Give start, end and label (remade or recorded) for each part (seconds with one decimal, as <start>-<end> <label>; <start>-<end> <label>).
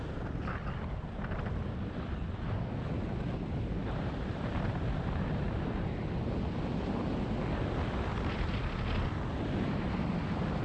0.0-3.8 recorded; 3.8-6.8 remade; 6.8-8.1 recorded; 8.1-8.6 remade; 8.6-9.3 recorded; 9.3-10.2 remade; 10.2-10.6 recorded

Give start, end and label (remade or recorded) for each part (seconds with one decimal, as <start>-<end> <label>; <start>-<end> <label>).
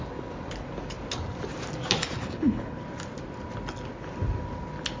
0.0-2.2 recorded; 2.2-2.8 remade; 2.8-5.0 recorded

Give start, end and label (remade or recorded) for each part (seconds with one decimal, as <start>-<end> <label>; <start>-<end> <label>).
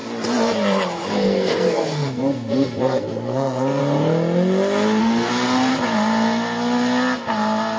0.0-1.1 recorded; 1.1-3.8 remade; 3.8-5.0 recorded; 5.0-5.7 remade; 5.7-7.8 recorded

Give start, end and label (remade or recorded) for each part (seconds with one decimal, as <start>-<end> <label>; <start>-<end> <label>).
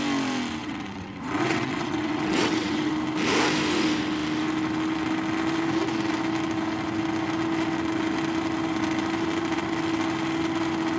0.0-0.6 recorded; 0.6-2.9 remade; 2.9-11.0 recorded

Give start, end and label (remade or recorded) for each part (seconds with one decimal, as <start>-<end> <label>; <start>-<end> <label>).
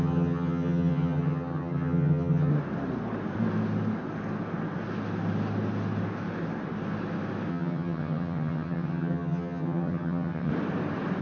0.0-2.5 remade; 2.5-7.5 recorded; 7.5-10.5 remade; 10.5-11.2 recorded